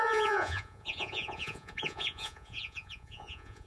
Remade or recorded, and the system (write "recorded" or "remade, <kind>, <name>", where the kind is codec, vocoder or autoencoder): remade, vocoder, Vocos